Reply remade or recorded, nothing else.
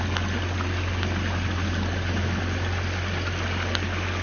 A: recorded